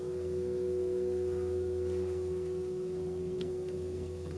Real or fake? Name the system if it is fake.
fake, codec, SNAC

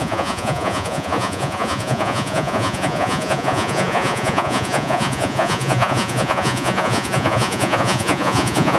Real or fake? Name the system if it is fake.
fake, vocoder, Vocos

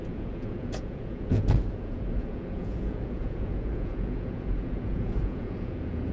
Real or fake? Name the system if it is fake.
fake, vocoder, Vocos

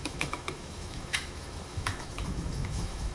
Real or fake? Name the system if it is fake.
fake, autoencoder, DAC-VAE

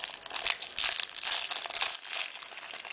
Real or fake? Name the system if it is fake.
real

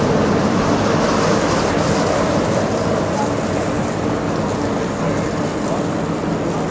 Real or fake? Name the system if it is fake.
real